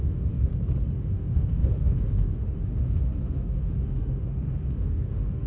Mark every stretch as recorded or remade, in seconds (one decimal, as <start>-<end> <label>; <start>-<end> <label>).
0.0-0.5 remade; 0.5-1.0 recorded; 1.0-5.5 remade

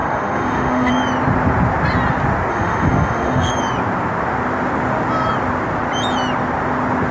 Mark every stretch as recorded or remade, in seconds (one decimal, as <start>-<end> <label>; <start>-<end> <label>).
0.0-0.9 remade; 0.9-2.5 recorded; 2.5-3.5 remade; 3.5-7.1 recorded

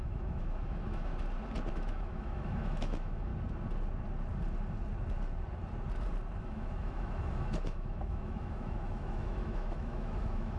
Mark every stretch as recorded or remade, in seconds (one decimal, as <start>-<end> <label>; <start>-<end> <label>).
0.0-1.1 remade; 1.1-1.7 recorded; 1.7-3.3 remade; 3.3-6.4 recorded; 6.4-10.6 remade